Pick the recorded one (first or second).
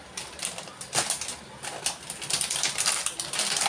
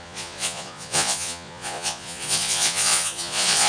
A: first